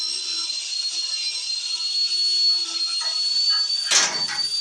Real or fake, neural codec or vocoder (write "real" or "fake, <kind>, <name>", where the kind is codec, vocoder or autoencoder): real